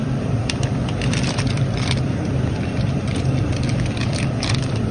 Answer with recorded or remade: remade